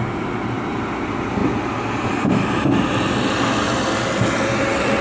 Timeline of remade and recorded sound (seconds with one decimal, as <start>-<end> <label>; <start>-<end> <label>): 0.0-5.0 recorded